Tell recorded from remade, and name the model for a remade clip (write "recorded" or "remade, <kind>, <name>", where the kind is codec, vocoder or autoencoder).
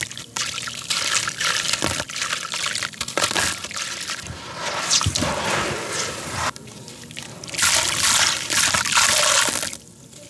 recorded